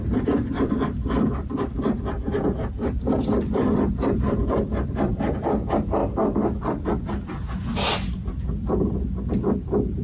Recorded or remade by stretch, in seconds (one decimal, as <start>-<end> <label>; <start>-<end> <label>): 0.0-6.0 remade; 6.0-10.0 recorded